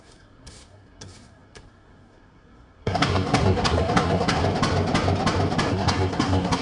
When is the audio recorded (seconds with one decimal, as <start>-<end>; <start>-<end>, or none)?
4.4-5.7